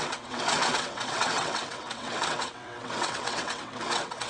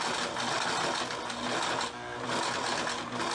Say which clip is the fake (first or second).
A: first